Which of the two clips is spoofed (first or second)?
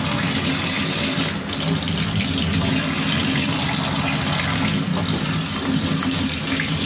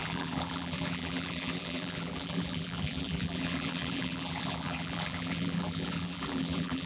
second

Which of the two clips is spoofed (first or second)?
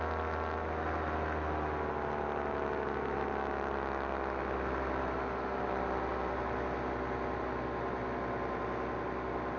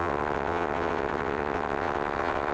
second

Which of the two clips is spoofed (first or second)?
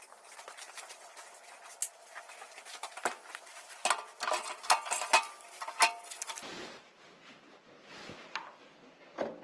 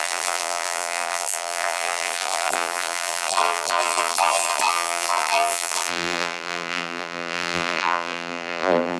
second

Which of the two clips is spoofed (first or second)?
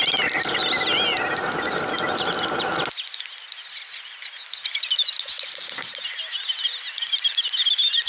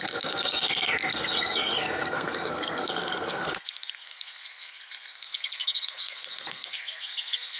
second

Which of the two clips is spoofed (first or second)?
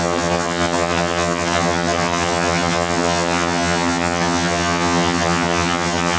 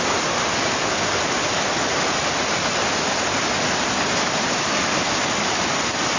first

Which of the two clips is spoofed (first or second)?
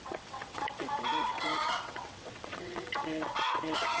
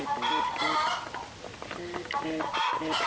first